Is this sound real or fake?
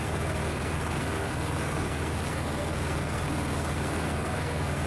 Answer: fake